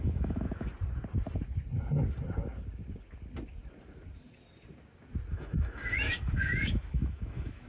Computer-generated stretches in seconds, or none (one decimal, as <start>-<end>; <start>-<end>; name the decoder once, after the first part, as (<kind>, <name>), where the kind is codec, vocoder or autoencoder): 0.0-0.7 (autoencoder, DAC-VAE); 5.3-7.7